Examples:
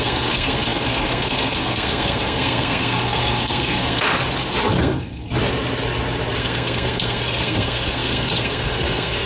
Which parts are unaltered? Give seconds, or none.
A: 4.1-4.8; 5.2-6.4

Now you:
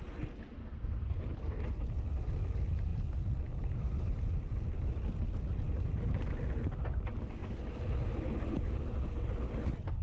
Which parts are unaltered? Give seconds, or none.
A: 0.0-0.6; 1.2-10.0

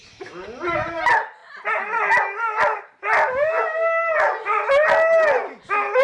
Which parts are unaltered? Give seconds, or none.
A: 0.0-6.0